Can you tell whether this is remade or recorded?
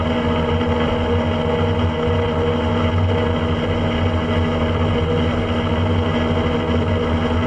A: recorded